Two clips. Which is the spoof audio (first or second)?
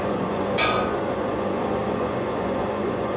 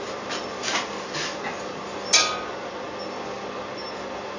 first